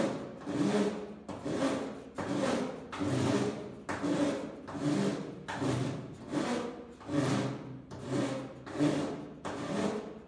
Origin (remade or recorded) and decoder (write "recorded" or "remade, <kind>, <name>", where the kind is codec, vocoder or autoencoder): recorded